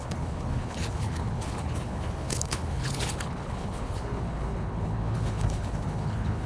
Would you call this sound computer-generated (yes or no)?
yes